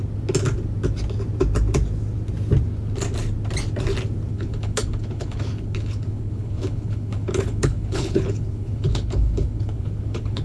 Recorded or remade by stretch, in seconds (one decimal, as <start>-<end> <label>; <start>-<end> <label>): 0.0-4.3 recorded; 4.3-10.4 remade